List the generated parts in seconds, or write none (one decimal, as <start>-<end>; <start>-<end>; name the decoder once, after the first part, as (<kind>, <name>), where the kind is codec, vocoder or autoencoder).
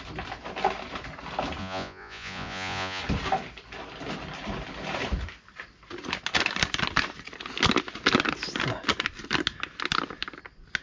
1.6-3.0 (vocoder, Vocos)